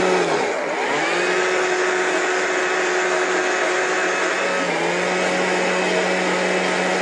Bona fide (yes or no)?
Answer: yes